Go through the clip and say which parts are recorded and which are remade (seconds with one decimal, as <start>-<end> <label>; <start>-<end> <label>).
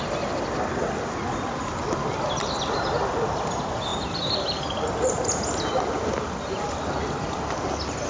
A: 0.0-8.1 recorded